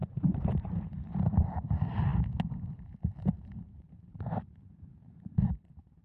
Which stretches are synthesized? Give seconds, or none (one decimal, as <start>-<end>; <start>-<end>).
0.0-2.1; 2.7-6.0